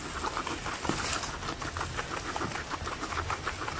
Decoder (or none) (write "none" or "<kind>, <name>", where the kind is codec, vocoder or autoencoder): none